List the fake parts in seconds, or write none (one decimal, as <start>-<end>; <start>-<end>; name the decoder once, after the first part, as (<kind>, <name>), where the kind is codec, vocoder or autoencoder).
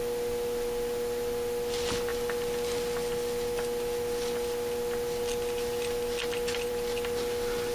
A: none